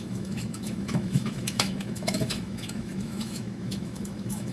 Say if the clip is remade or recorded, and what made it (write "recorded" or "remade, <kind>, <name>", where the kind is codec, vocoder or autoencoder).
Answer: remade, autoencoder, DAC-VAE